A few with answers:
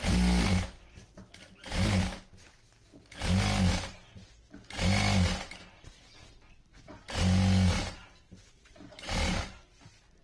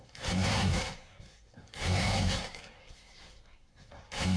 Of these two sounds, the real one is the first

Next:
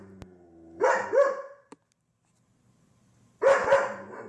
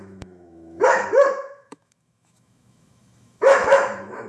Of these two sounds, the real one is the first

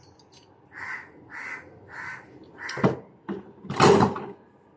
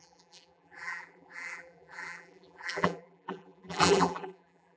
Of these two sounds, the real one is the first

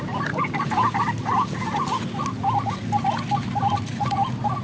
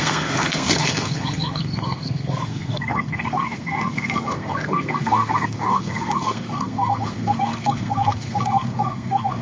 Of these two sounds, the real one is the first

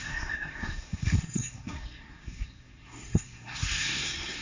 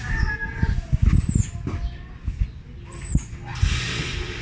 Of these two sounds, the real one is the second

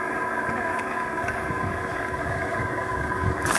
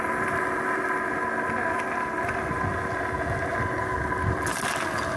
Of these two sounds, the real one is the second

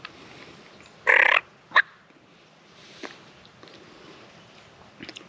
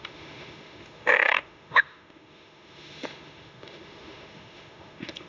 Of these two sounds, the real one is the first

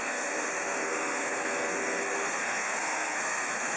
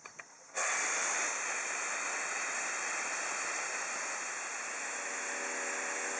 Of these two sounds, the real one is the second